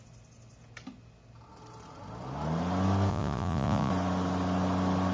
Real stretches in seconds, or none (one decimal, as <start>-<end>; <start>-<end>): 0.0-3.1; 3.9-5.1